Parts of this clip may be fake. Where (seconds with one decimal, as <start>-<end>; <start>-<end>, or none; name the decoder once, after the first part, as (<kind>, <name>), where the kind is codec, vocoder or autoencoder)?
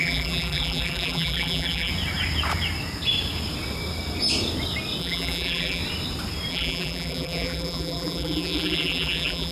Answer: 0.0-1.9 (vocoder, BigVGAN v2); 5.0-5.8; 6.5-9.5